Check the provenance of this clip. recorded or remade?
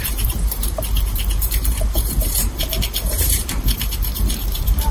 remade